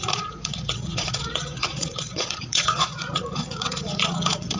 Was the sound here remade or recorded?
remade